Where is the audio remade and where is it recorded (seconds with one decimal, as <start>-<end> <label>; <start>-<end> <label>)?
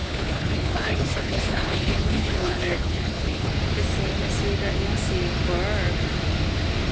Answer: 0.0-3.5 remade; 3.5-6.9 recorded